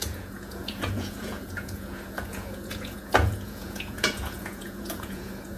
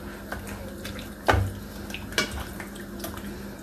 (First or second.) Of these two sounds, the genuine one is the second